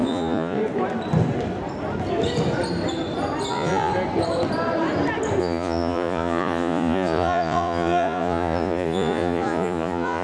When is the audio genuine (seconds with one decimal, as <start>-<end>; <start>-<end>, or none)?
0.6-3.5; 3.9-5.4

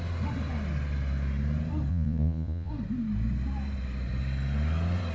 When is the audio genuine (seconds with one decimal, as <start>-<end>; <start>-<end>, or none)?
0.0-1.9; 2.7-5.1

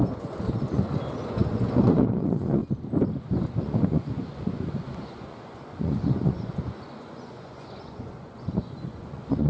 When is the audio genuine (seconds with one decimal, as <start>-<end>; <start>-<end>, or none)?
2.6-3.6

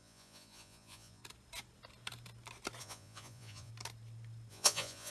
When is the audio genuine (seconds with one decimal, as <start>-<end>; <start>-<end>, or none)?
1.2-2.8; 3.7-4.5

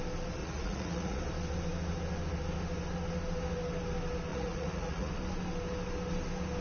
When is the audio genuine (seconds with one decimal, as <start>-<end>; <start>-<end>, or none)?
0.0-0.4; 1.2-4.3; 5.1-6.6

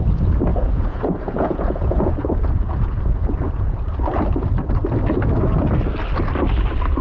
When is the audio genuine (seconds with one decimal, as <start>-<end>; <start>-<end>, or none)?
0.0-0.5; 3.8-7.0

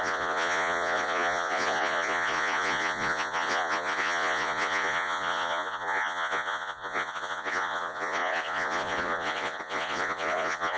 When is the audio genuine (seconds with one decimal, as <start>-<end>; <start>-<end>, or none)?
none

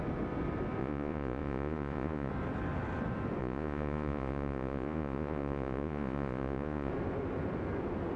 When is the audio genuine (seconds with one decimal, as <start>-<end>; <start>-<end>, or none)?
0.0-0.8; 2.3-3.4; 6.9-8.2